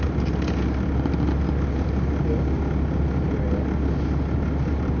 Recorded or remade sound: recorded